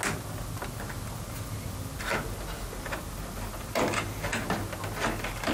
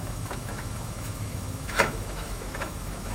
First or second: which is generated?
second